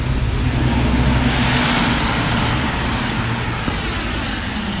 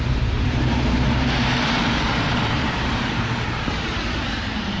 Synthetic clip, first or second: second